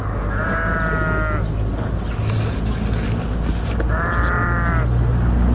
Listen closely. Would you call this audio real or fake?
real